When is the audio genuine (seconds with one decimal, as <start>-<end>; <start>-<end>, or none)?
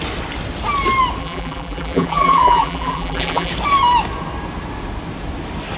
0.0-1.2; 3.5-5.8